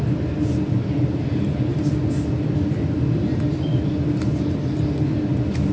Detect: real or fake real